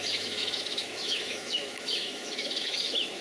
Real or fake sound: fake